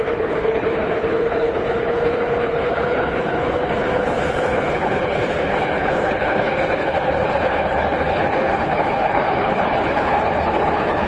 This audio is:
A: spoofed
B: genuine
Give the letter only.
A